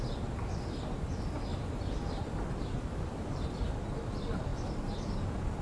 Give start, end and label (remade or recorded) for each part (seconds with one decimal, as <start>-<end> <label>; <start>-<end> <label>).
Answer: 0.0-1.5 recorded; 1.5-3.7 remade; 3.7-4.5 recorded; 4.5-5.6 remade